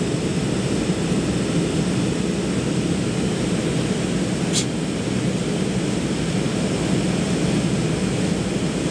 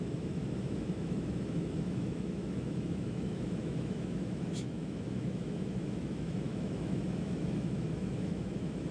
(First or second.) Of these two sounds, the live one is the first